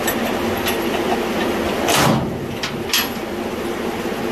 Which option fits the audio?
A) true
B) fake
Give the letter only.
A